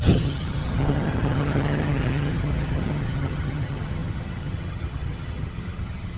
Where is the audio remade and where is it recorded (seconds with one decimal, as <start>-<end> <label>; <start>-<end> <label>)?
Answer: 0.0-6.2 remade